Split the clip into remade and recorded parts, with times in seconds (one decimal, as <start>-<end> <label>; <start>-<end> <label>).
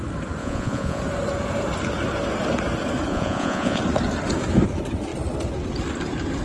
0.0-0.4 recorded; 0.4-1.0 remade; 1.0-3.1 recorded; 3.1-3.8 remade; 3.8-6.4 recorded